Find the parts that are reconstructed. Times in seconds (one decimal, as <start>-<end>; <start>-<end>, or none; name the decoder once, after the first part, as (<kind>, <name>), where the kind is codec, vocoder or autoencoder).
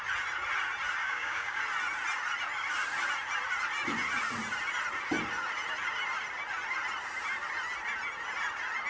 1.0-1.6 (codec, DAC)